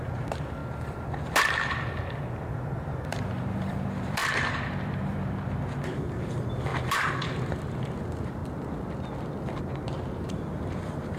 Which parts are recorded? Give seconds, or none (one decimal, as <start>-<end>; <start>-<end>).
0.6-2.3; 8.4-10.1